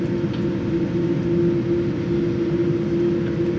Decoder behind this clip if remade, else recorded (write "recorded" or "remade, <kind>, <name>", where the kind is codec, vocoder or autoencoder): recorded